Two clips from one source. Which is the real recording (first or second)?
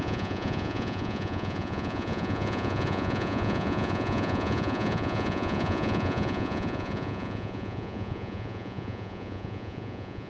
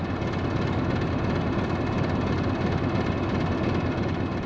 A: second